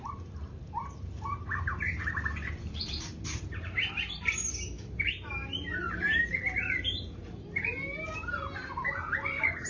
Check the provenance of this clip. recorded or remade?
remade